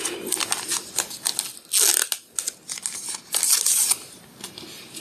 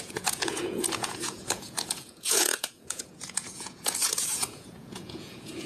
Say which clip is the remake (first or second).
second